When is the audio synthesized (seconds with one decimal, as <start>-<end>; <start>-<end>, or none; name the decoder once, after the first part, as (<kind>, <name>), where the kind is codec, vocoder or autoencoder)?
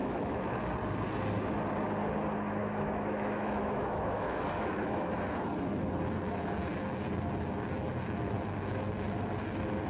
0.0-0.6 (autoencoder, DAC-VAE); 2.6-5.1